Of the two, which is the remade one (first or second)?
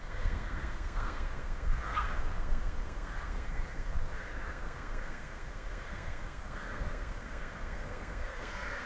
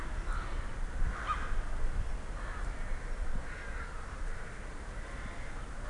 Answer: first